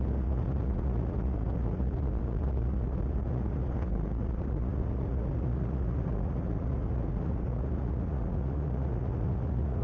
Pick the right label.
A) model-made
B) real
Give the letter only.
A